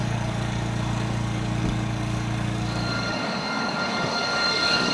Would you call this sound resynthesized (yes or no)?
yes